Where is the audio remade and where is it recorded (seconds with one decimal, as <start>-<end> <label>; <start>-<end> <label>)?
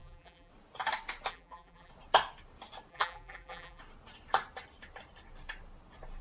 0.0-0.5 remade; 0.5-1.3 recorded; 1.3-1.9 remade; 1.9-2.9 recorded; 2.9-3.8 remade; 3.8-6.2 recorded